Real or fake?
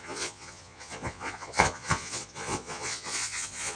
fake